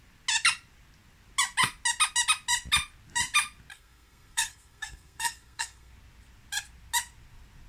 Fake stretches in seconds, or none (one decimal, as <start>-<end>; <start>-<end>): 3.7-5.9